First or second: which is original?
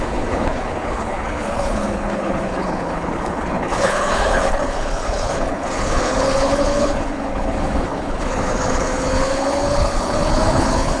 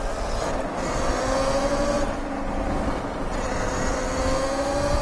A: second